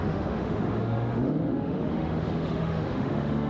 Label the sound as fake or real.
fake